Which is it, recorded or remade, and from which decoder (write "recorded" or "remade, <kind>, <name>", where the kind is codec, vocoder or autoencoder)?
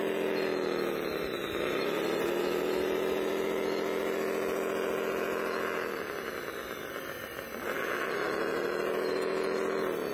recorded